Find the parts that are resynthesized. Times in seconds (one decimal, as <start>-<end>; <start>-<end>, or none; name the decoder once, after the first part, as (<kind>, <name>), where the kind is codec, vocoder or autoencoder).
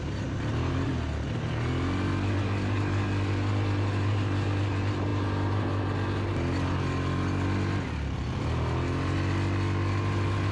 none